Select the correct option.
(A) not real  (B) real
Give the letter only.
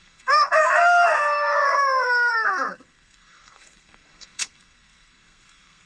A